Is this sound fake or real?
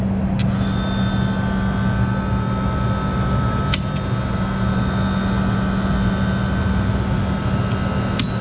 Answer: real